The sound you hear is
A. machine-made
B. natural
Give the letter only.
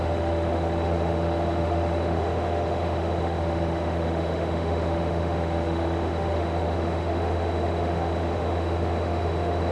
A